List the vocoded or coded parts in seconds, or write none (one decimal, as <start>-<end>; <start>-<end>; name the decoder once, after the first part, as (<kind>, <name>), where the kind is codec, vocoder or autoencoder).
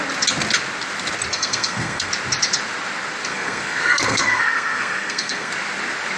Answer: 1.3-2.1 (codec, SNAC); 3.3-5.5